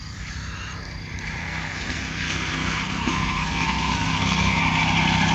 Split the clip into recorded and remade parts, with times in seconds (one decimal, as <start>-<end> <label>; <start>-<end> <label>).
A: 0.0-1.4 recorded; 1.4-4.6 remade; 4.6-5.3 recorded